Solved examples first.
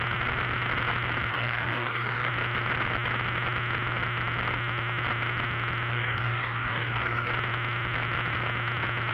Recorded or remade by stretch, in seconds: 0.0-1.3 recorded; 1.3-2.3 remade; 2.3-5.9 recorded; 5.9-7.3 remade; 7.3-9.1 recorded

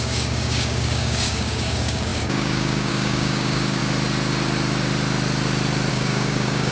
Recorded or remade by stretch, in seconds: 0.0-3.8 remade; 3.8-5.9 recorded; 5.9-6.7 remade

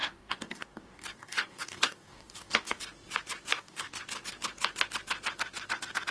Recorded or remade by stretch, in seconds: 0.0-2.8 remade; 2.8-3.5 recorded; 3.5-4.0 remade; 4.0-6.1 recorded

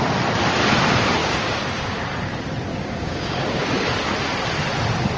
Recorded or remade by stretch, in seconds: 0.0-1.2 recorded; 1.2-2.0 remade; 2.0-2.7 recorded; 2.7-3.7 remade; 3.7-5.2 recorded

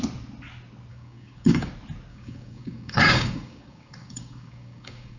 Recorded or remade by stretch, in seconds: 0.0-0.9 recorded; 0.9-1.7 remade; 1.7-2.1 recorded; 2.1-5.2 remade

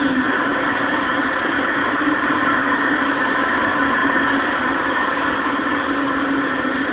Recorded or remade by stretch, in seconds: 0.0-2.6 recorded; 2.6-3.6 remade; 3.6-6.9 recorded

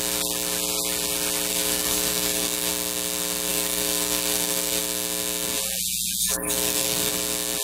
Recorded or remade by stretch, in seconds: 0.0-1.5 recorded; 1.5-2.7 remade; 2.7-3.5 recorded; 3.5-4.8 remade; 4.8-6.2 recorded; 6.2-7.1 remade; 7.1-7.6 recorded

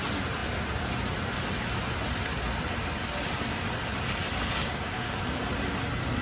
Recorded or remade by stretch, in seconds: 0.0-4.6 recorded; 4.6-5.2 remade; 5.2-6.2 recorded